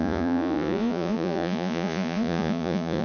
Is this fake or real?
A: fake